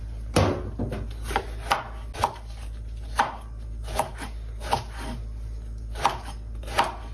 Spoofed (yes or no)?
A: no